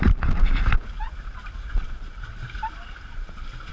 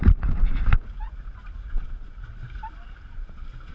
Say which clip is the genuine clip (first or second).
second